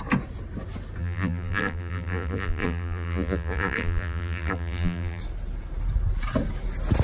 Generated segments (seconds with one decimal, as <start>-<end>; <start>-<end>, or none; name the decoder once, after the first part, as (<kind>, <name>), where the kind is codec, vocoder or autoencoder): 1.0-5.2 (vocoder, BigVGAN v2)